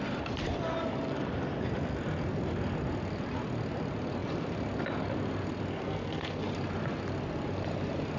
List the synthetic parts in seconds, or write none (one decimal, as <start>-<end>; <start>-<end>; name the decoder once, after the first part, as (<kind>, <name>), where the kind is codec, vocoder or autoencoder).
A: 5.7-6.5 (codec, SNAC)